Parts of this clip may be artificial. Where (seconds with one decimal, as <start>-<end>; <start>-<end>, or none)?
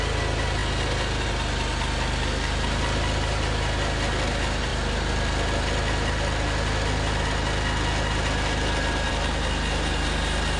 none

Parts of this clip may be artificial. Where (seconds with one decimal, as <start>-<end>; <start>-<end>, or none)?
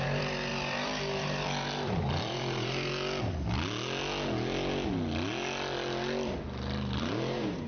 0.0-2.9; 7.0-7.7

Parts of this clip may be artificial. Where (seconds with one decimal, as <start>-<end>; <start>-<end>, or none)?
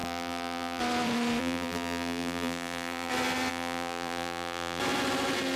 0.0-0.8; 1.4-3.1; 3.5-4.8